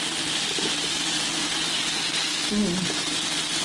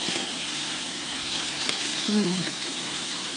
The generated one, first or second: second